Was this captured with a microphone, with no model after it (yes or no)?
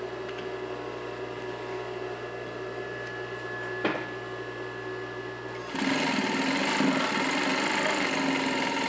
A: yes